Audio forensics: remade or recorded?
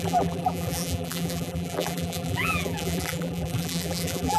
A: remade